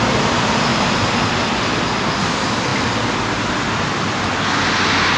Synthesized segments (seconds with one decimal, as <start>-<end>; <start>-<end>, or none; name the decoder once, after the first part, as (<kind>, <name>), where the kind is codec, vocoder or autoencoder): 0.7-2.2 (vocoder, BigVGAN v2)